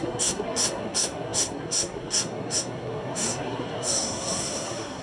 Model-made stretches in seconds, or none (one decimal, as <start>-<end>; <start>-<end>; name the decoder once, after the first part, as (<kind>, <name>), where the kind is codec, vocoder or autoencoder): 0.0-5.0 (codec, SNAC)